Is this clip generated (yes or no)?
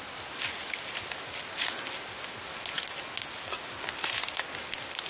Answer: no